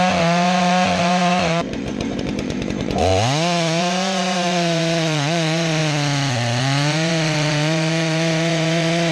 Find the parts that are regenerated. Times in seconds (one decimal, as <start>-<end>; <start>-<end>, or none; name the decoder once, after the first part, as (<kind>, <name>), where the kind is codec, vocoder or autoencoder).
0.0-3.1 (vocoder, Vocos); 3.8-5.8; 6.6-9.1